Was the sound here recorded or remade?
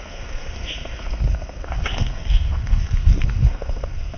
remade